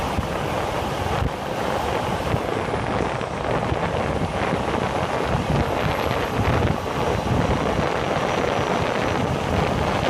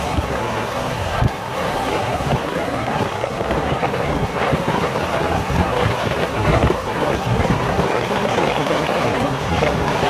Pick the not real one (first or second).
second